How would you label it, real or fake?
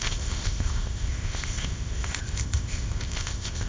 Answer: fake